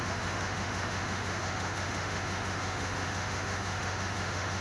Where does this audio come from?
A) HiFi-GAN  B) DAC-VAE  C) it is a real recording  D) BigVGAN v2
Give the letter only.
B